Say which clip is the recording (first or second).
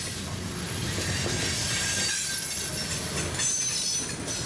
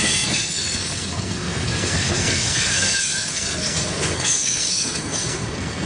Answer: first